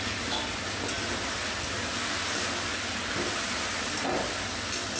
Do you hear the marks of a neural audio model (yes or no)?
no